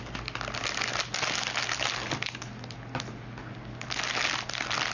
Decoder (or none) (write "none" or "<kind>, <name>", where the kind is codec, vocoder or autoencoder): none